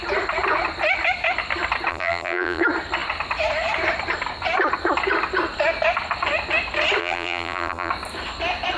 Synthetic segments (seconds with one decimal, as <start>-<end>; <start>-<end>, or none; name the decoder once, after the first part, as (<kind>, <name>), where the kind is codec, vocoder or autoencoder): 1.9-2.6 (vocoder, BigVGAN v2); 7.0-7.9